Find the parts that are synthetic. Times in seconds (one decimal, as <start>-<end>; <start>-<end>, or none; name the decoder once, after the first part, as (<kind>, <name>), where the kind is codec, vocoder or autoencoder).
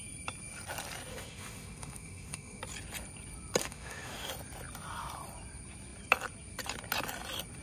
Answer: 1.1-2.6 (autoencoder, DAC-VAE); 3.6-4.3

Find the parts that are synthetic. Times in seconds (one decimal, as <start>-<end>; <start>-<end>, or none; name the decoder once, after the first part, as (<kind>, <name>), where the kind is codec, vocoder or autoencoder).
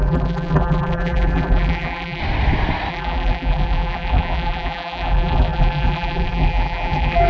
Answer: 0.0-2.2 (vocoder, BigVGAN v2); 2.9-7.3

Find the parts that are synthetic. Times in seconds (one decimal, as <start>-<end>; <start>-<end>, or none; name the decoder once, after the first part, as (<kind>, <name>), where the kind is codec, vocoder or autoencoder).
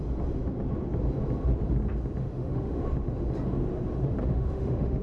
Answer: 2.2-2.8 (autoencoder, DAC-VAE); 4.2-5.0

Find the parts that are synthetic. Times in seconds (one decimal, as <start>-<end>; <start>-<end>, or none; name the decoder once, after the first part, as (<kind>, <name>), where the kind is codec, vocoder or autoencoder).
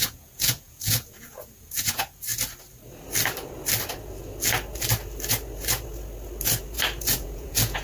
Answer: 0.0-2.3 (vocoder, Vocos); 7.0-7.8